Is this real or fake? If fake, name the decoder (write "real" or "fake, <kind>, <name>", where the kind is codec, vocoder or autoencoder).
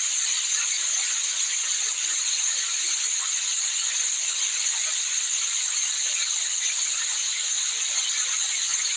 real